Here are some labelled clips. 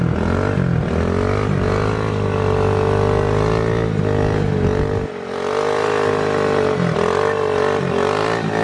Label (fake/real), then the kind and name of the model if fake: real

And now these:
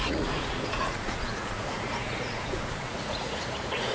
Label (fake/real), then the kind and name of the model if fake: fake, vocoder, Vocos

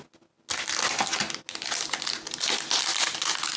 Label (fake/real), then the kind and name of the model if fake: real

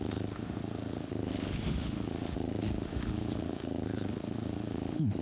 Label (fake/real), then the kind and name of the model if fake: fake, autoencoder, DAC-VAE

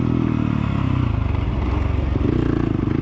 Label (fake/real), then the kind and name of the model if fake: real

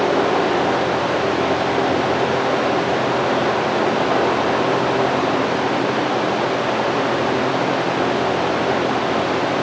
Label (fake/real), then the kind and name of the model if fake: real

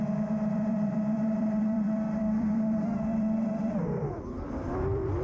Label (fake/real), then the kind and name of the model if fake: fake, vocoder, BigVGAN v2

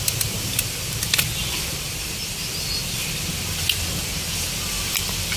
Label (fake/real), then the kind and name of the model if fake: real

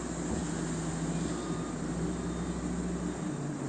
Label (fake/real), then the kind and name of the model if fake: real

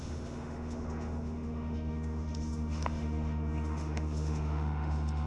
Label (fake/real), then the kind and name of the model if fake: fake, autoencoder, DAC-VAE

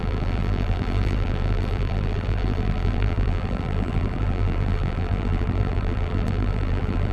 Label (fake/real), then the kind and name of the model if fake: fake, vocoder, BigVGAN v2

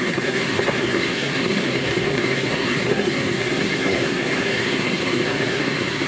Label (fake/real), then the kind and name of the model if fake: fake, codec, SNAC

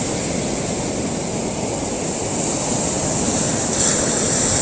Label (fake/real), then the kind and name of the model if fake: real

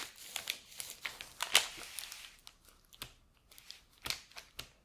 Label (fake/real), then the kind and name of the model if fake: real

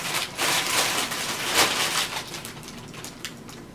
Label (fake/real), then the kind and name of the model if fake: fake, vocoder, BigVGAN v2